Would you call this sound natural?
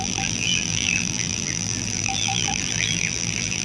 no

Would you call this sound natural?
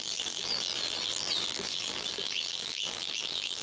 no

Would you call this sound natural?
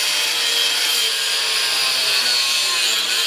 no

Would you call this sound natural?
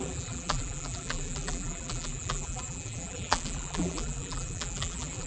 no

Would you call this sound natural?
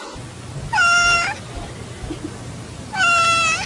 yes